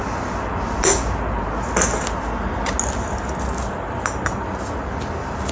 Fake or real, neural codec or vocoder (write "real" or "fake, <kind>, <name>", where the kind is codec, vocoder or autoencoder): real